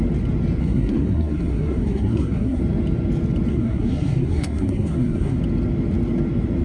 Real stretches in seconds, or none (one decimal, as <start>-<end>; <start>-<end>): 0.0-0.6; 2.6-3.5; 5.4-6.6